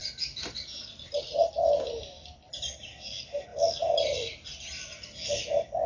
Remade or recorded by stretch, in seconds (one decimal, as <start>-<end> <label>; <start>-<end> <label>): 0.0-5.9 recorded